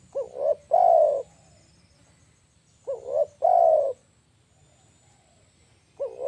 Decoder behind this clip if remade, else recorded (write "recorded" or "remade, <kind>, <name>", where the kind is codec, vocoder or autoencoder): recorded